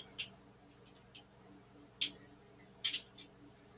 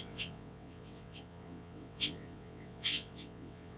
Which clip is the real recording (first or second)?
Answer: first